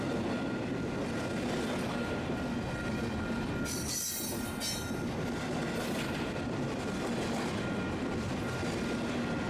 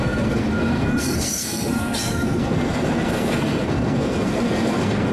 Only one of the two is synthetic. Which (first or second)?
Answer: second